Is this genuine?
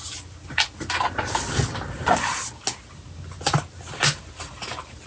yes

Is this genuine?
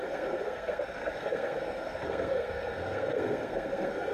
no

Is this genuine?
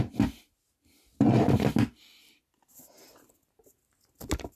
yes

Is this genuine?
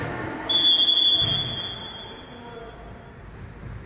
yes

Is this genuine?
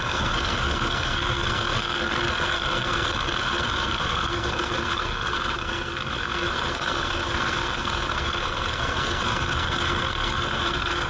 no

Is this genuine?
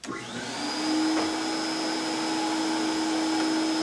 yes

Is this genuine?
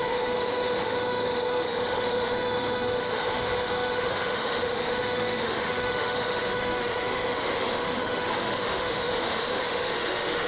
no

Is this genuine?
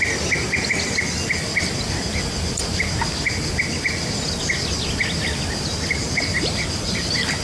yes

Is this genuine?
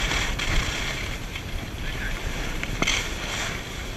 yes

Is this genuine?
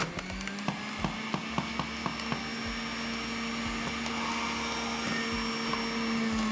yes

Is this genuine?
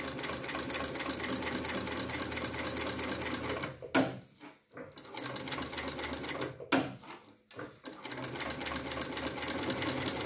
yes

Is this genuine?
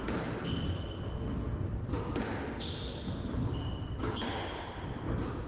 yes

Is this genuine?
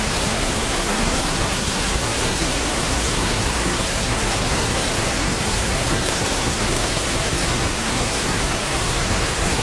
no